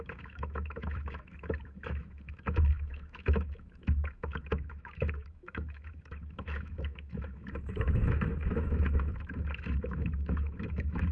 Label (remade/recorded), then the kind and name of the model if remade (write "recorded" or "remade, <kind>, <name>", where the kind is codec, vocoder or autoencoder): remade, autoencoder, DAC-VAE